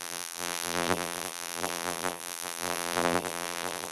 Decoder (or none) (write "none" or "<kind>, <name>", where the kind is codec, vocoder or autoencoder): vocoder, BigVGAN v2